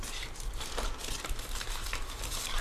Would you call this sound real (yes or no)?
yes